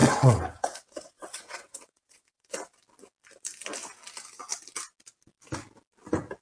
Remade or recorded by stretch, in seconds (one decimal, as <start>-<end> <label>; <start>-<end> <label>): 0.0-2.5 remade; 2.5-6.4 recorded